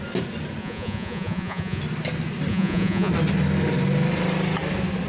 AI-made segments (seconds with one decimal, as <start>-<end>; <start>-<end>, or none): 0.6-1.8; 2.5-3.1